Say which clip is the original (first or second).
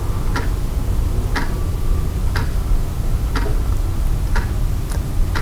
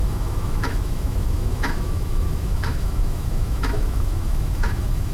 first